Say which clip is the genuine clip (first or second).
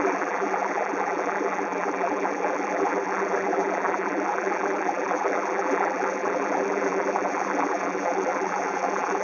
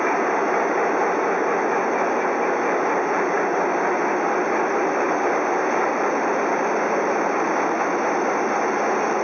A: second